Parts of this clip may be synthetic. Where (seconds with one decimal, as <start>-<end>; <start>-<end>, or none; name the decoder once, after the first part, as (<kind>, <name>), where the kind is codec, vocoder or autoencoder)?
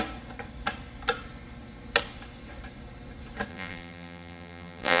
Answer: 3.5-5.0 (vocoder, BigVGAN v2)